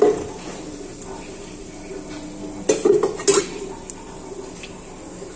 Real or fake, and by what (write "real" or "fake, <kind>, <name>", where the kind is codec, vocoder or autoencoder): real